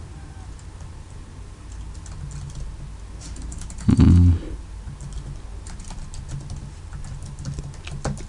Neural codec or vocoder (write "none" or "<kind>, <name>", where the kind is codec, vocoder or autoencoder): none